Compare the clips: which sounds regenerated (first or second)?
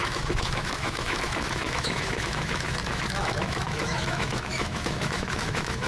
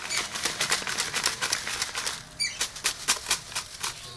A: first